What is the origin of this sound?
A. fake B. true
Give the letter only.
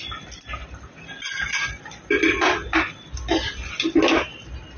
B